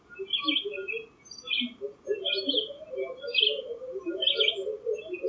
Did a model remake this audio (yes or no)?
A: no